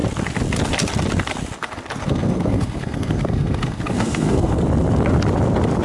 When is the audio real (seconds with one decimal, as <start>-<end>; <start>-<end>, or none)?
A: 0.0-2.0; 4.6-5.8